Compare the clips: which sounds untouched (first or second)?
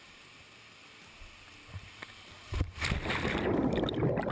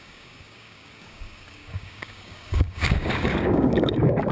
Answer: first